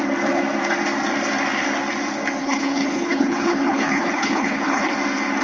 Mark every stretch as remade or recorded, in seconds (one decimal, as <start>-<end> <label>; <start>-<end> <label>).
0.0-2.4 recorded; 2.4-4.9 remade; 4.9-5.4 recorded